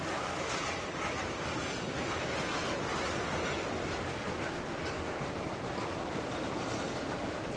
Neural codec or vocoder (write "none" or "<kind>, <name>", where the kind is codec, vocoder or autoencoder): none